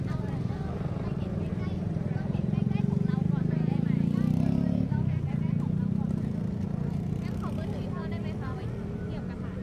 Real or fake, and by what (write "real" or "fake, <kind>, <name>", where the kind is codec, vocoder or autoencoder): real